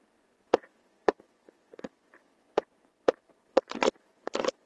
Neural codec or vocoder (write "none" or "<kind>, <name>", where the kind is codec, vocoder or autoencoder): vocoder, Vocos